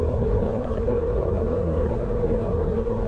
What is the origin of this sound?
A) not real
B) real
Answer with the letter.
A